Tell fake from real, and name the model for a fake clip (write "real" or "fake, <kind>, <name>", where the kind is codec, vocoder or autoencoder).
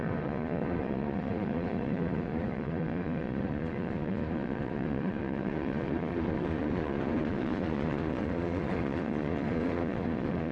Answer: fake, vocoder, Vocos